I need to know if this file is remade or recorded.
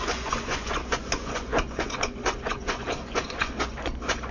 remade